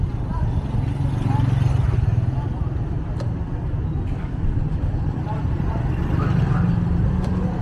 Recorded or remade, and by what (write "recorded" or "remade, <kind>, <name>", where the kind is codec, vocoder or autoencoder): recorded